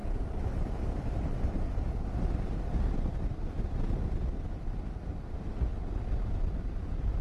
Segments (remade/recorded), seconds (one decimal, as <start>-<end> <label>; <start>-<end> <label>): 0.0-2.1 remade; 2.1-5.1 recorded; 5.1-5.8 remade; 5.8-7.2 recorded